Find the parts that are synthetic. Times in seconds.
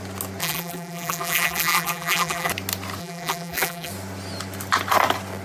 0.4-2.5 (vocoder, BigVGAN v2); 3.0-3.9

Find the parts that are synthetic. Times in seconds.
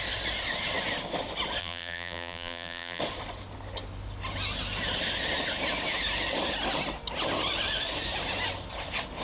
1.6-3.0 (vocoder, BigVGAN v2)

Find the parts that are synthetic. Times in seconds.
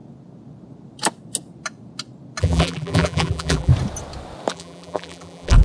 2.4-3.7 (vocoder, BigVGAN v2); 4.5-5.6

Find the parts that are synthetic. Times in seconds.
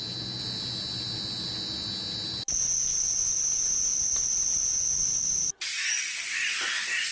none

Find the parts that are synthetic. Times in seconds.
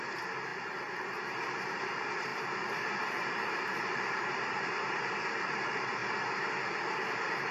0.0-0.5 (vocoder, BigVGAN v2); 1.0-6.0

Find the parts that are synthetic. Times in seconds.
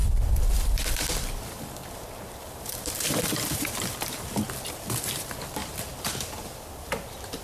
0.0-4.4 (vocoder, BigVGAN v2); 5.6-7.4